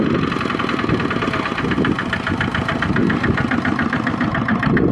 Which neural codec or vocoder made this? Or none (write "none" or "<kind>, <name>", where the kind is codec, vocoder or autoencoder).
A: none